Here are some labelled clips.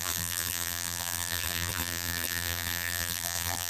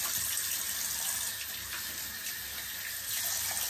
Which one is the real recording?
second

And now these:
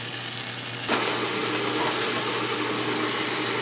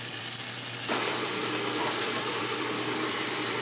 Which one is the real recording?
first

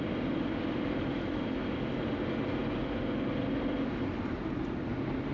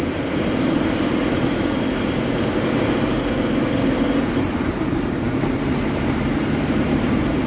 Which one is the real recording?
first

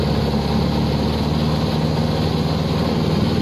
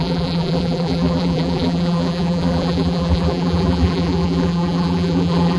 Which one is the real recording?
first